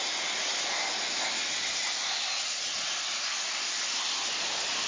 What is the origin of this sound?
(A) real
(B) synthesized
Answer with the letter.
A